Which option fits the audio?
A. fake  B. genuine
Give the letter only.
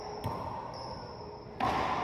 B